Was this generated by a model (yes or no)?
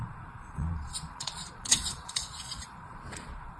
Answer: yes